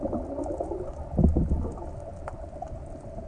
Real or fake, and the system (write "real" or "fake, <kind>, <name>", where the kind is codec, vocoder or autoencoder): real